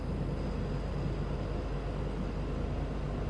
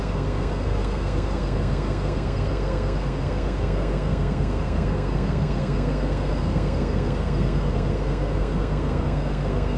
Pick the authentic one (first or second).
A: first